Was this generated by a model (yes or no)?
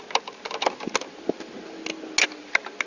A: no